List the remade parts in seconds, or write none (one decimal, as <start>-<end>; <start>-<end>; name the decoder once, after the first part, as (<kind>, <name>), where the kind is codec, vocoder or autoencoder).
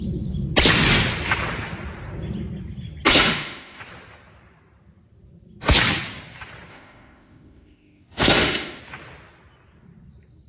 3.1-3.8 (autoencoder, DAC-VAE); 6.7-8.8